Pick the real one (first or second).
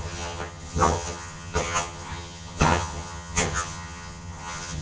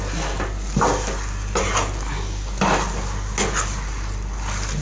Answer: second